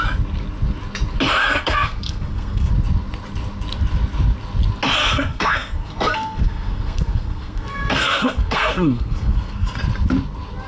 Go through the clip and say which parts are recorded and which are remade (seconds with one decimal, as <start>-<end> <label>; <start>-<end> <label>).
0.0-1.4 recorded; 1.4-2.7 remade; 2.7-5.0 recorded; 5.0-9.8 remade; 9.8-10.7 recorded